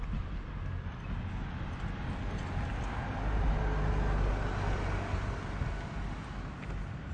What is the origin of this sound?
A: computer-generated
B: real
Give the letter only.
B